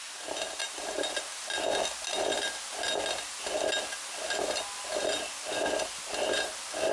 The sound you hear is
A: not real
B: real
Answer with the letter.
B